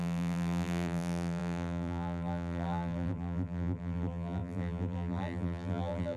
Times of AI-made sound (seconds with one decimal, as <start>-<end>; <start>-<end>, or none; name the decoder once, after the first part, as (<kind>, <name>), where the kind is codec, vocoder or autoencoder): 0.0-6.2 (vocoder, BigVGAN v2)